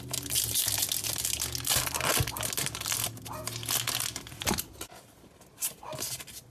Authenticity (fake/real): real